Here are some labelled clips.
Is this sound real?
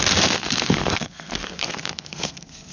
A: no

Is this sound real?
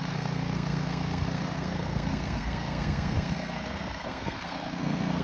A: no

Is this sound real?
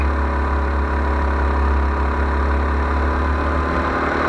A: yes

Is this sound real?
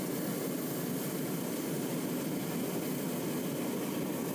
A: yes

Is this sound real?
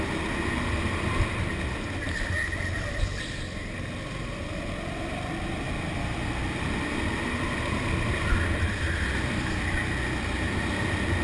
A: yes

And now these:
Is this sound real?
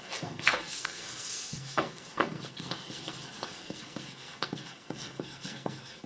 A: no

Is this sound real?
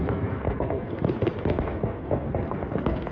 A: no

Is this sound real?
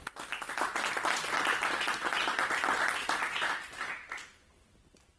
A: yes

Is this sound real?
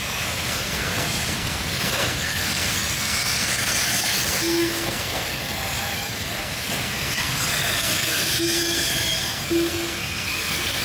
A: no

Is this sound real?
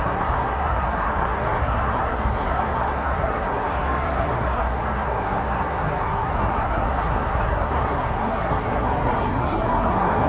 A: no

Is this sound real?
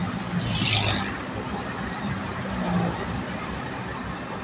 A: yes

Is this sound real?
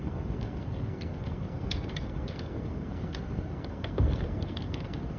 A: no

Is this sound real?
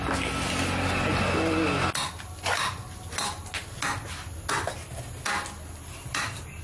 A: yes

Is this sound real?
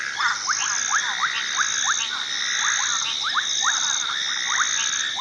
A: yes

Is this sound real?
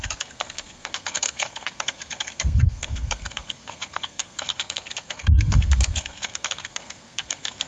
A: no